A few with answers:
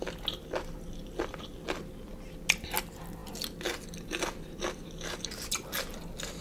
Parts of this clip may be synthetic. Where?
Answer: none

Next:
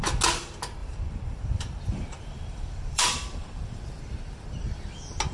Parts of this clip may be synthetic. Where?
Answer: 0.8-4.0 (vocoder, BigVGAN v2)